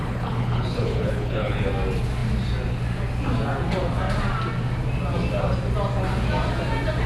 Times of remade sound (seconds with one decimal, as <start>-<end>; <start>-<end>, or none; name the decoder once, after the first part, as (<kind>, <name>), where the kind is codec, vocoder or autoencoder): 0.0-1.7 (codec, HILCodec)